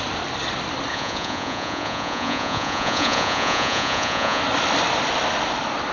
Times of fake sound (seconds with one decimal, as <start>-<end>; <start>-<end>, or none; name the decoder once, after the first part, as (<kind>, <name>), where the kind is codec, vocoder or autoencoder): 0.9-4.4 (vocoder, Vocos)